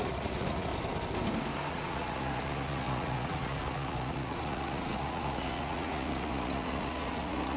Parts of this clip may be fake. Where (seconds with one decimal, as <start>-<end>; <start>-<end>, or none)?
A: 0.0-0.7; 1.7-7.6